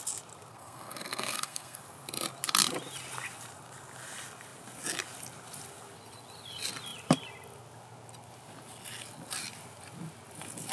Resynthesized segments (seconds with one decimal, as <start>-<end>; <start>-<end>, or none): 0.5-1.8